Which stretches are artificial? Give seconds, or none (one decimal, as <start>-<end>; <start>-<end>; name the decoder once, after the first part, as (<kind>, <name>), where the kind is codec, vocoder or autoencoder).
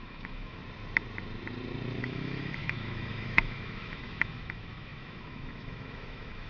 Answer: 0.0-0.6 (autoencoder, DAC-VAE); 2.0-6.5